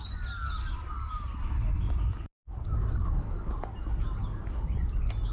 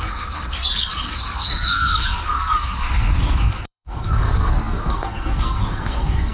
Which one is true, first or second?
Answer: first